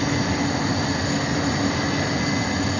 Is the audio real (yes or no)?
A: no